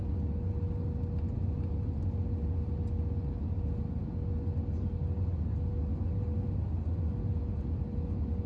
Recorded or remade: recorded